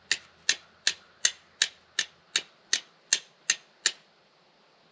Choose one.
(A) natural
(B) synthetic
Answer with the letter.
A